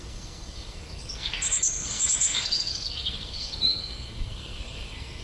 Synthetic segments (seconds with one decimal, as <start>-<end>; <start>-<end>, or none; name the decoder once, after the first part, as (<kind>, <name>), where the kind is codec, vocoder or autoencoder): 0.0-5.2 (codec, SNAC)